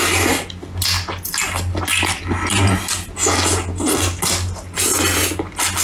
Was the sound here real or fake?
real